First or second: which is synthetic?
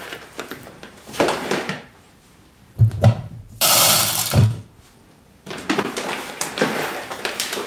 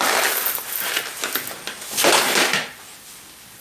first